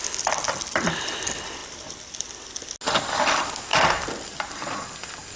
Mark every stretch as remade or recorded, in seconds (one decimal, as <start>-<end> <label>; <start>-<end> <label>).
0.0-1.6 recorded; 1.6-2.5 remade; 2.5-5.4 recorded